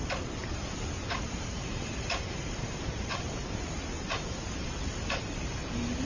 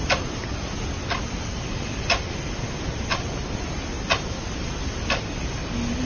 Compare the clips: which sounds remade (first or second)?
first